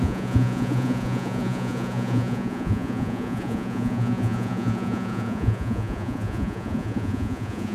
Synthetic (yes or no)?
yes